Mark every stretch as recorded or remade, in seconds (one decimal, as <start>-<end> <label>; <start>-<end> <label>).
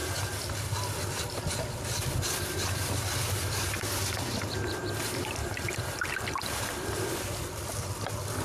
0.0-0.9 recorded; 0.9-8.4 remade